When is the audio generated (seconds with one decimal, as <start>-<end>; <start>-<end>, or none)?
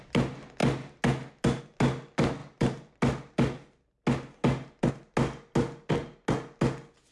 none